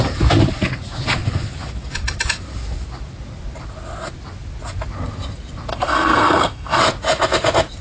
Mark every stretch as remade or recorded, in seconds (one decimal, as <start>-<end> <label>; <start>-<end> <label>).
0.0-5.7 recorded; 5.7-6.8 remade; 6.8-7.8 recorded